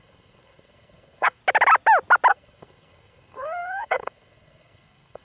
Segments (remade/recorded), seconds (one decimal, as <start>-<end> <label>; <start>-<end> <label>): 0.0-1.4 remade; 1.4-2.3 recorded; 2.3-5.2 remade